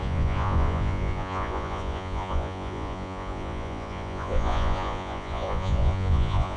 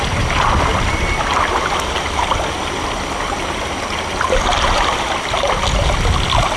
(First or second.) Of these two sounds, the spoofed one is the first